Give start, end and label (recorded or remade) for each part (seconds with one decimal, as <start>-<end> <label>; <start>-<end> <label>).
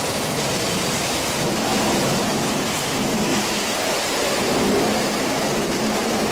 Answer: 0.0-1.7 remade; 1.7-2.2 recorded; 2.2-3.3 remade; 3.3-5.0 recorded; 5.0-6.3 remade